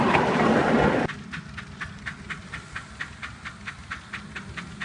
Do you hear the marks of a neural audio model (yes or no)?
no